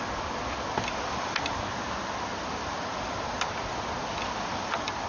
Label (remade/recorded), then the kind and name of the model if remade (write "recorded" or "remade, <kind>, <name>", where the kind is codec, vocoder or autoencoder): recorded